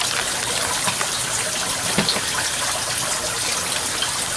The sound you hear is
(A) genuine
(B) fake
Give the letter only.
A